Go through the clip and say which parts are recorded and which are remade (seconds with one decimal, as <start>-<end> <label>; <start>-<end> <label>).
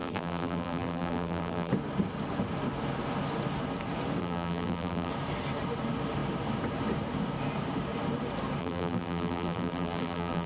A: 0.0-1.7 remade; 1.7-4.2 recorded; 4.2-5.1 remade; 5.1-8.6 recorded; 8.6-10.5 remade